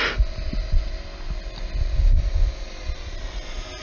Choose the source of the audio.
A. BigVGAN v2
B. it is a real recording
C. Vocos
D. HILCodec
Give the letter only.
B